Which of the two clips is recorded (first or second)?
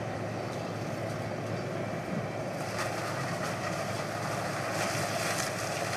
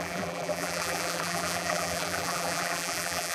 first